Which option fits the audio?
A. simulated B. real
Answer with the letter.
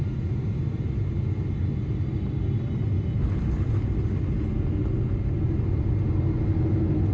B